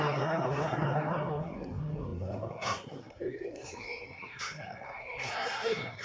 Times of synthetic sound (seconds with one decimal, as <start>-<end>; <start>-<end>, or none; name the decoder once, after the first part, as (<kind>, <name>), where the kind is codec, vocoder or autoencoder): 0.0-6.0 (codec, SNAC)

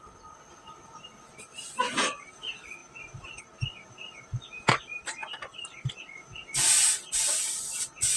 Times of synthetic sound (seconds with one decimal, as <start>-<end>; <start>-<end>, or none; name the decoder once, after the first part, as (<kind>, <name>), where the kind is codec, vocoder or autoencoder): none

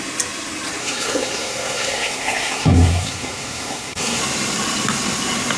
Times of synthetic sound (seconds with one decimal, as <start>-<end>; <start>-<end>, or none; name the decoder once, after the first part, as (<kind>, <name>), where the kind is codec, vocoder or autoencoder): 0.8-4.2 (codec, SNAC)

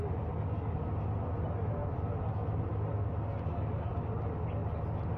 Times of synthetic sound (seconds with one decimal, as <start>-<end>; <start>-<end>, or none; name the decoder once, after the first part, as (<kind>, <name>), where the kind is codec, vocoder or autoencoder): none